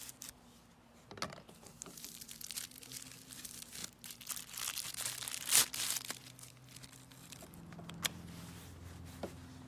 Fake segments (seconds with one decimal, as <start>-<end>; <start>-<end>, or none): none